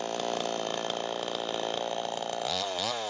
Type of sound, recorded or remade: recorded